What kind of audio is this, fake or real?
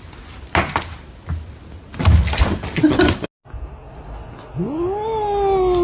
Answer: real